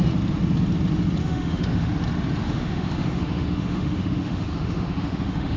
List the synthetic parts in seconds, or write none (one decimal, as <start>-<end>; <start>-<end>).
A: 1.2-1.9; 2.4-5.6

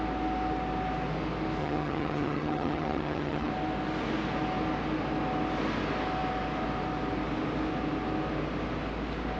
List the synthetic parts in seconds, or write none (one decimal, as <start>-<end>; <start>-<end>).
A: 1.6-3.5